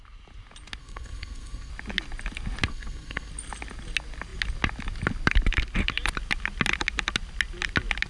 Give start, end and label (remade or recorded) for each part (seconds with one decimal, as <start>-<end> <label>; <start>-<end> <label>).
0.0-0.8 recorded; 0.8-1.7 remade; 1.7-2.7 recorded; 2.7-3.3 remade; 3.3-8.1 recorded